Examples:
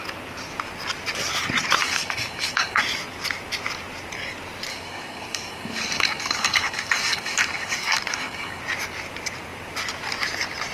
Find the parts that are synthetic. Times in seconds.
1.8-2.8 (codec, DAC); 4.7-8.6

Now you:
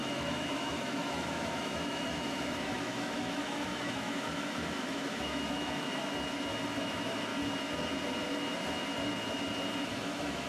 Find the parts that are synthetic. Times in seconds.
0.0-6.0 (autoencoder, DAC-VAE); 6.8-7.3; 9.9-10.5

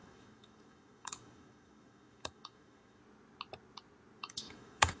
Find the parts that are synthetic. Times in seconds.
0.0-3.0 (autoencoder, DAC-VAE); 4.2-5.0